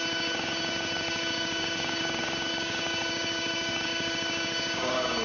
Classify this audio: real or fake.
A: fake